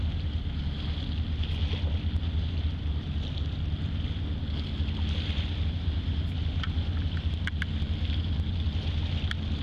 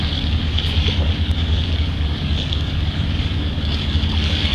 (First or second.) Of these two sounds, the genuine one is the first